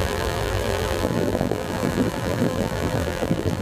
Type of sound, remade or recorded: remade